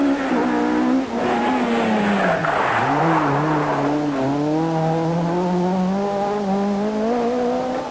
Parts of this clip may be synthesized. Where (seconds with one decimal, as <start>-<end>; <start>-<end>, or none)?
none